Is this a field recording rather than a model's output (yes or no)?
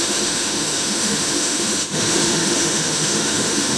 no